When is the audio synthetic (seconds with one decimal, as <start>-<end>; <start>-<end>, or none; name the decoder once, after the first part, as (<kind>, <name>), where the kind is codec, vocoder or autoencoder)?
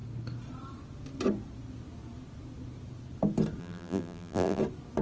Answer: 3.6-4.6 (vocoder, BigVGAN v2)